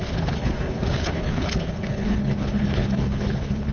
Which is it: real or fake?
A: fake